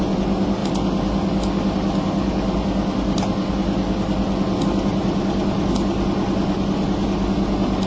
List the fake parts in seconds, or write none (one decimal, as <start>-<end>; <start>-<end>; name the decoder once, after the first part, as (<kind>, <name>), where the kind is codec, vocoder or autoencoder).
none